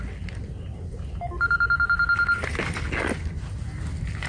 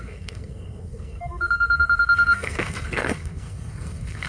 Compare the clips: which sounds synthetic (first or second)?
second